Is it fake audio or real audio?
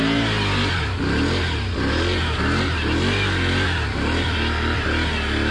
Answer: real